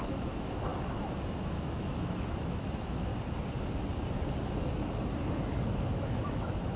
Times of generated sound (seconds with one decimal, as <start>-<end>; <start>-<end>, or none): 0.0-0.7; 1.3-3.1; 5.7-6.8